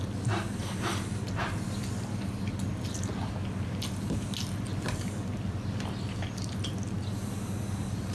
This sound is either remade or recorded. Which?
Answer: recorded